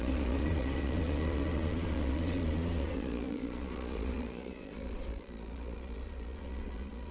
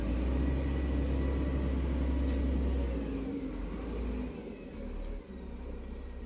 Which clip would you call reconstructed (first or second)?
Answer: first